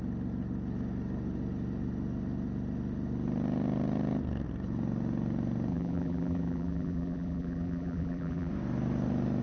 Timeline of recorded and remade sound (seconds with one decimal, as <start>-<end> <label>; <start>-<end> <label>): 0.0-5.7 recorded; 5.7-8.5 remade; 8.5-9.4 recorded